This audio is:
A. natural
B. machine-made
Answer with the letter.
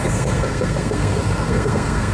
B